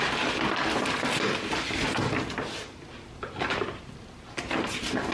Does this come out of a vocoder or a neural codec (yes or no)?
no